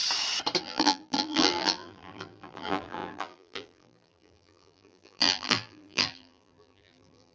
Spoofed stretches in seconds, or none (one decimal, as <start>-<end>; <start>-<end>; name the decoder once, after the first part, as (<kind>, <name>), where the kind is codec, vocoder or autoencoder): 0.6-7.3 (vocoder, BigVGAN v2)